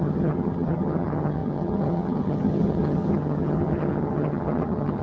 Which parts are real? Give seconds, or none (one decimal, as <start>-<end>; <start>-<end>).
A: none